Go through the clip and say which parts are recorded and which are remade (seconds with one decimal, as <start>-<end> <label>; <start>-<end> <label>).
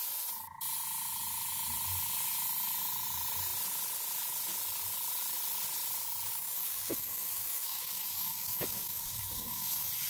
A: 0.0-6.3 recorded; 6.3-9.7 remade; 9.7-10.1 recorded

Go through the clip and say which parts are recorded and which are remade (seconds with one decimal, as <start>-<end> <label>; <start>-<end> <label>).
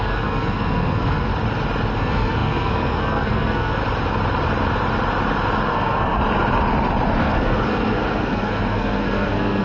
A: 0.0-1.3 remade; 1.3-2.0 recorded; 2.0-3.8 remade; 3.8-5.7 recorded; 5.7-6.2 remade; 6.2-7.2 recorded; 7.2-9.6 remade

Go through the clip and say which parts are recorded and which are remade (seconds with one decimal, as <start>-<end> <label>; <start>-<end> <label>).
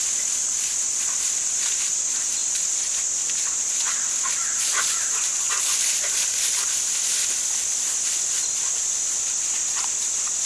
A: 0.0-10.5 recorded